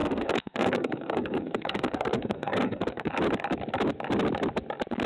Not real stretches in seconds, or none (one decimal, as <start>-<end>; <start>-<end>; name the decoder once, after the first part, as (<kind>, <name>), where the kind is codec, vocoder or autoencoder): 0.0-3.1 (codec, SNAC)